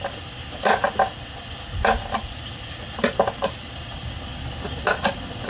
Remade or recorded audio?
remade